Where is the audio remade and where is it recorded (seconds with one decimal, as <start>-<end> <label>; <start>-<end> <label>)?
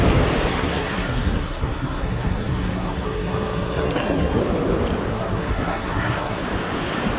0.0-0.5 recorded; 0.5-4.4 remade; 4.4-5.1 recorded; 5.1-6.4 remade; 6.4-7.2 recorded